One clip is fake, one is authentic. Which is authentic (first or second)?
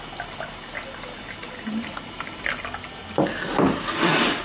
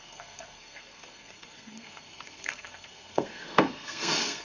first